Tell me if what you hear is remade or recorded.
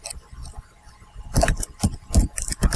recorded